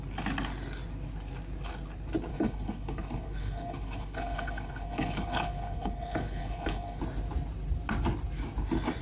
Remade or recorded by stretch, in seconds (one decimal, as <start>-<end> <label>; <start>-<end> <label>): 0.0-2.3 recorded; 2.3-7.0 remade; 7.0-9.0 recorded